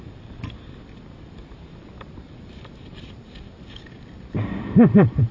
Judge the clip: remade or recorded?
recorded